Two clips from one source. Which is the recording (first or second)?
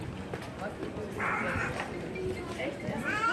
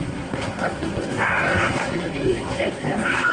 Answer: first